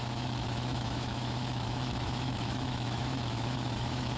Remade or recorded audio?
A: remade